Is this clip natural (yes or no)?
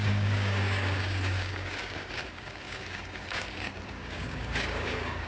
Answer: no